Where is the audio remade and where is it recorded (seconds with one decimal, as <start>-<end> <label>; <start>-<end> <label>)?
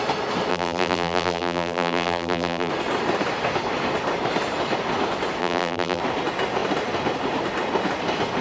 0.0-0.5 recorded; 0.5-2.7 remade; 2.7-5.4 recorded; 5.4-6.0 remade; 6.0-8.4 recorded